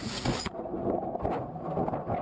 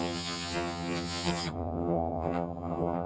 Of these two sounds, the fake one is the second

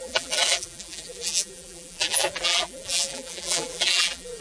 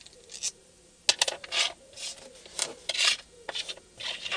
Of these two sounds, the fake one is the first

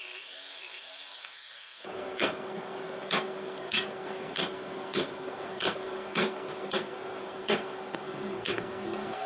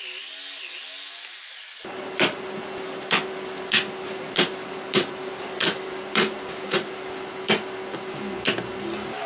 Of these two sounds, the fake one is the first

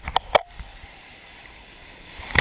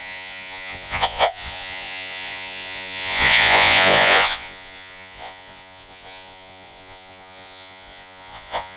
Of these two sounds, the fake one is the second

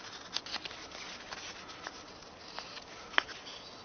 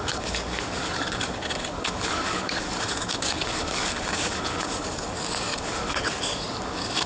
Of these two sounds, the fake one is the second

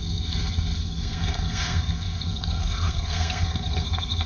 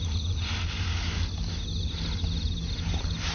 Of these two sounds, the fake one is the first